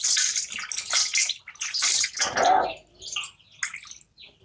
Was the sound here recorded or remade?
recorded